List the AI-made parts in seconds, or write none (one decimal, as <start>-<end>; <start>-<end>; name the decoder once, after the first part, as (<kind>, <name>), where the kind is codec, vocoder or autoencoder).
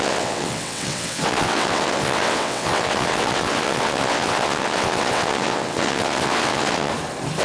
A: 0.0-6.9 (vocoder, WaveNeXt)